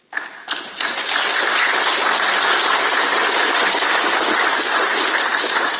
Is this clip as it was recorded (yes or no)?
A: yes